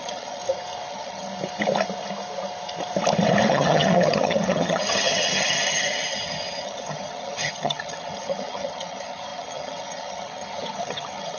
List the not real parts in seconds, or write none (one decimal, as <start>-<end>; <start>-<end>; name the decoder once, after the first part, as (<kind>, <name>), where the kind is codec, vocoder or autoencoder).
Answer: 0.0-0.4 (vocoder, HiFi-GAN); 0.9-1.3; 3.5-11.4